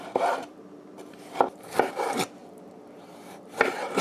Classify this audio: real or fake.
fake